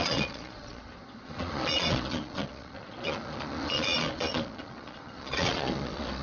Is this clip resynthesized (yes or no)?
yes